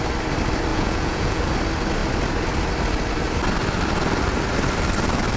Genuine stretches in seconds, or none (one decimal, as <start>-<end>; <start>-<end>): 0.0-0.7; 1.4-5.4